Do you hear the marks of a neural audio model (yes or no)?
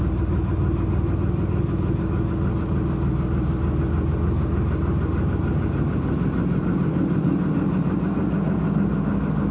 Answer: no